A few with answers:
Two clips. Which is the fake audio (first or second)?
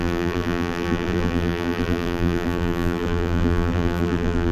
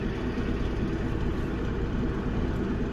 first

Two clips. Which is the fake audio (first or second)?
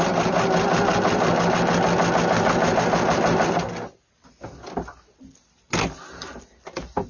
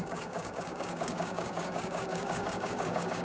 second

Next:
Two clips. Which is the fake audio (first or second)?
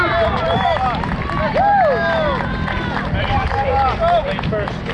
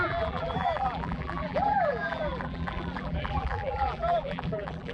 second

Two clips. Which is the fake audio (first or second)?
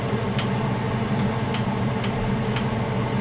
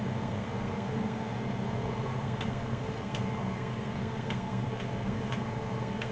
second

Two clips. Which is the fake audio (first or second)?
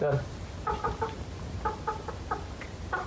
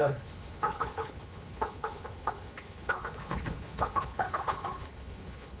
second